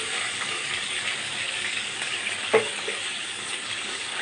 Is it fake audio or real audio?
fake